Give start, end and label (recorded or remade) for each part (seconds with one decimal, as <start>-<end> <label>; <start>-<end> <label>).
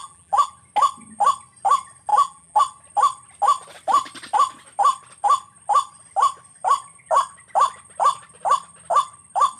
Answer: 0.0-0.5 remade; 0.5-2.1 recorded; 2.1-2.6 remade; 2.6-9.6 recorded